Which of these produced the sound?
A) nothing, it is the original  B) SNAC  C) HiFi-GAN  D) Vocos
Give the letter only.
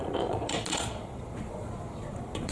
D